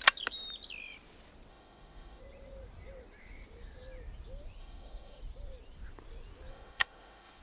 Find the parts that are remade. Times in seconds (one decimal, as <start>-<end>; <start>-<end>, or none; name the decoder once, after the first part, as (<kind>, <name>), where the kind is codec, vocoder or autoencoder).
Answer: 1.5-2.2 (autoencoder, DAC-VAE); 4.6-5.2; 6.5-7.4